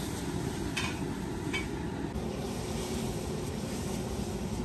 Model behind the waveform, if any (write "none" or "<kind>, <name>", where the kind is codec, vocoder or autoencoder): none